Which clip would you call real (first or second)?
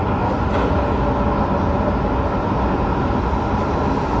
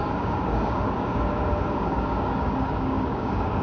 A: first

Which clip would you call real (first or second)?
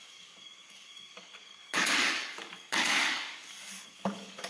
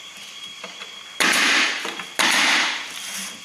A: second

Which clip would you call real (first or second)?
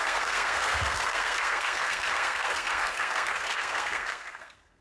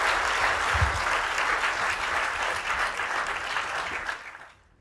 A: second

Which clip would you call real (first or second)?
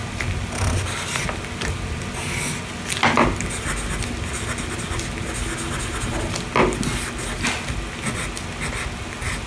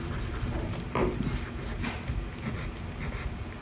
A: first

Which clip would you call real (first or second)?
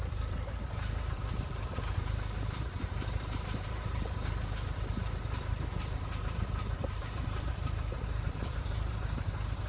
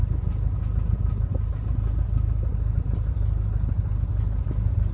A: second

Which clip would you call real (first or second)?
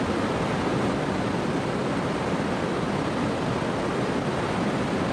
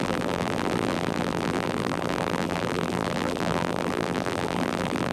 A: first